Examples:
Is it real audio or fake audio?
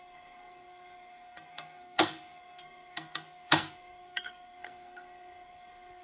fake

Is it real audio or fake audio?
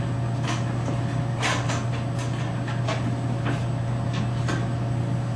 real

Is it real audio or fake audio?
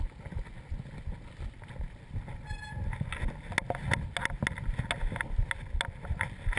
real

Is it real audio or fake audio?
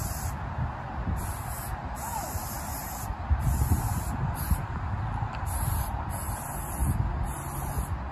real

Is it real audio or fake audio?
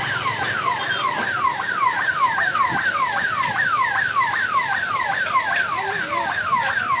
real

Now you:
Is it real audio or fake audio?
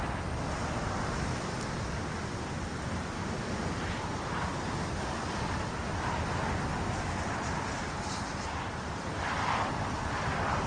real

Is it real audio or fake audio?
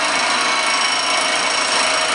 real